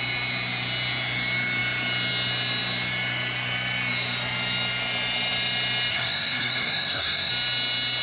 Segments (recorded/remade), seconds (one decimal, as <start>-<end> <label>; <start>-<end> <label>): 0.0-5.9 recorded; 5.9-7.3 remade; 7.3-8.0 recorded